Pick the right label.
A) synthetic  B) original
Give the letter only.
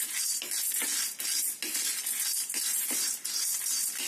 B